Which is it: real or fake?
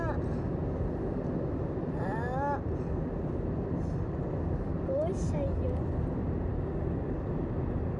real